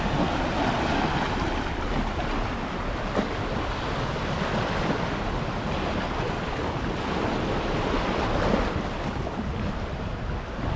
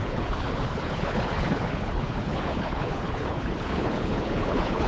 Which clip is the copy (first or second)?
second